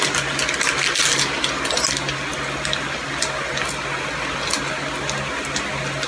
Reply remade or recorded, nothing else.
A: recorded